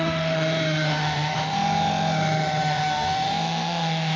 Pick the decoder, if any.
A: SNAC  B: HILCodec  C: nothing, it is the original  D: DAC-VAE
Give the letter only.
D